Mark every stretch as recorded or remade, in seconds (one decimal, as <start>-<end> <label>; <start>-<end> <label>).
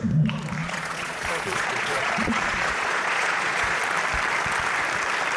0.0-0.6 recorded; 0.6-3.8 remade; 3.8-5.4 recorded